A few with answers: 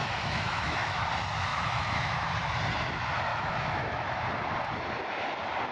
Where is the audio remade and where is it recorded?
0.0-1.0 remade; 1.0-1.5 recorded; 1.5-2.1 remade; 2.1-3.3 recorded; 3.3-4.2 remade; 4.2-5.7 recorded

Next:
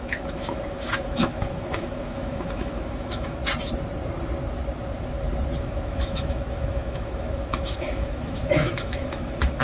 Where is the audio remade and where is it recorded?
0.0-3.4 remade; 3.4-5.6 recorded; 5.6-9.6 remade

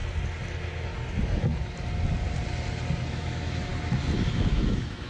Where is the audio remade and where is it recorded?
0.0-3.1 recorded; 3.1-3.7 remade; 3.7-4.3 recorded; 4.3-5.1 remade

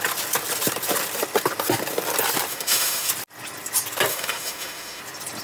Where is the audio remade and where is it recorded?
0.0-2.5 recorded; 2.5-3.1 remade; 3.1-4.1 recorded; 4.1-5.0 remade; 5.0-5.4 recorded

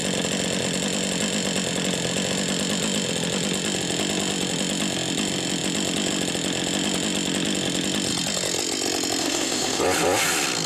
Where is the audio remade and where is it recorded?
0.0-9.2 recorded; 9.2-9.8 remade; 9.8-10.7 recorded